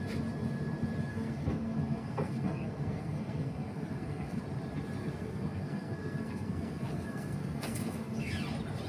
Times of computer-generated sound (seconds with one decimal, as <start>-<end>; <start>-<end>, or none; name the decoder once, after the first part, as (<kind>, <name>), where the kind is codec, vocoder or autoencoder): 1.1-4.4 (codec, SNAC); 5.0-8.3